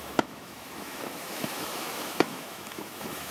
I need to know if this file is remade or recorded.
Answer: remade